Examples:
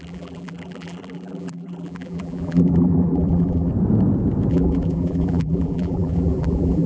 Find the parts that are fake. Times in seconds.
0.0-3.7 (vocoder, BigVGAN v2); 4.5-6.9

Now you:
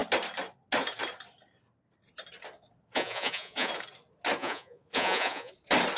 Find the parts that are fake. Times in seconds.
2.9-3.7 (vocoder, Vocos); 4.4-5.5

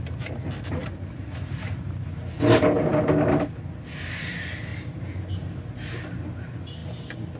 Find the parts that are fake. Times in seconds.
0.8-2.3 (vocoder, BigVGAN v2); 4.7-5.8

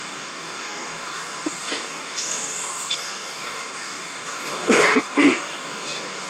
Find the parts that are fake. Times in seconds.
0.0-6.3 (codec, DAC)

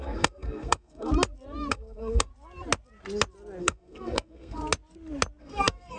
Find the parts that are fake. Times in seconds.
0.0-1.1 (codec, SNAC); 1.7-2.3; 3.6-4.6; 5.4-6.0